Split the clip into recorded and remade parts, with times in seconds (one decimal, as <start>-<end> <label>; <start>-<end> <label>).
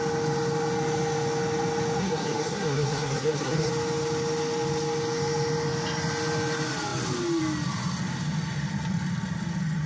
0.0-2.0 recorded; 2.0-3.7 remade; 3.7-9.9 recorded